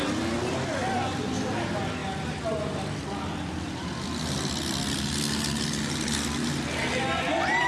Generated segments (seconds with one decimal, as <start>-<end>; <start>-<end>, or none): none

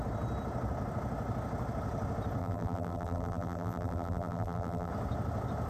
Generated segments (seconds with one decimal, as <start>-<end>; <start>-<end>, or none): 2.4-4.9

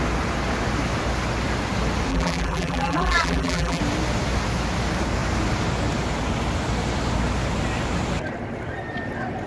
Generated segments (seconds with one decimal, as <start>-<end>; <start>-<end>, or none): 2.1-3.8